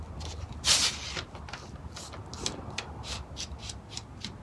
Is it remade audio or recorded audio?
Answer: recorded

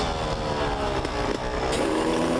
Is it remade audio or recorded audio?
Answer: recorded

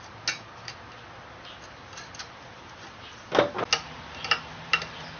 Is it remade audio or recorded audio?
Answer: recorded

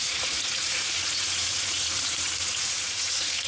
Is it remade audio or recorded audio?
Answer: remade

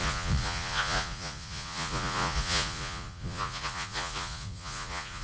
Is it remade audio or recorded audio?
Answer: remade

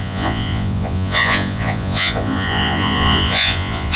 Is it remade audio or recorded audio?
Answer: remade